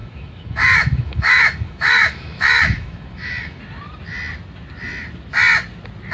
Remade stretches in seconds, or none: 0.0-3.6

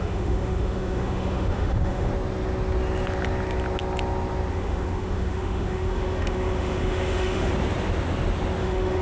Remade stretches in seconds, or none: 0.0-2.1; 4.5-7.5; 8.6-9.0